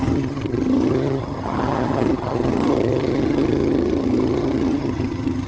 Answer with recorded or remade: remade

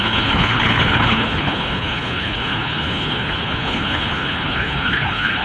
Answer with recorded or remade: remade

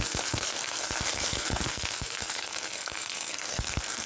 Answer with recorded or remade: remade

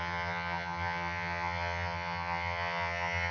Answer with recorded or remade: remade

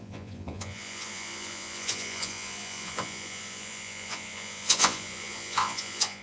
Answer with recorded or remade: remade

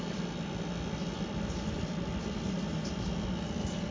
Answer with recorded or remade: recorded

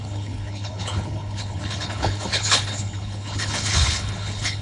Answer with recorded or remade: remade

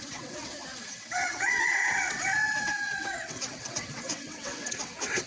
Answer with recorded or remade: remade